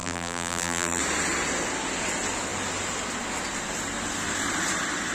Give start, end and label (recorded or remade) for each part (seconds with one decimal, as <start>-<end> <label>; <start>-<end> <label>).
0.0-1.0 remade; 1.0-5.1 recorded